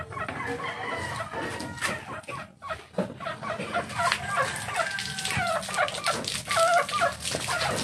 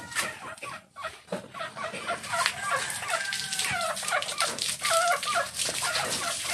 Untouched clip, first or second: first